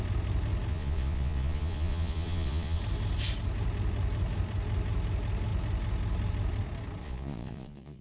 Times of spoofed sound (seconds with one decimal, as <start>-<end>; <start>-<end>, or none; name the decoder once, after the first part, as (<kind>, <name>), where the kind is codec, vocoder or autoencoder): 0.7-2.8 (vocoder, Vocos); 7.0-8.0